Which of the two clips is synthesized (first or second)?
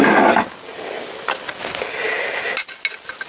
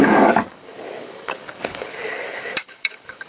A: second